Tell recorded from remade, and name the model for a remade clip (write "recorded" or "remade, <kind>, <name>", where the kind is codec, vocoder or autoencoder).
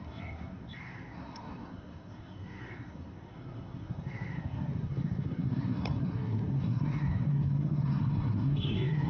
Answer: remade, codec, SNAC